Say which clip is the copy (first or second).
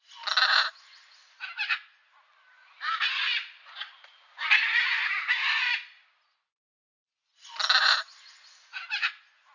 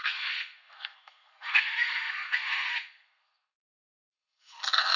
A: second